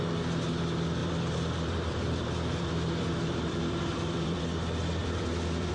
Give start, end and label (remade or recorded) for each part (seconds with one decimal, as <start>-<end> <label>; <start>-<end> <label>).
0.0-1.0 recorded; 1.0-4.4 remade; 4.4-5.0 recorded; 5.0-5.7 remade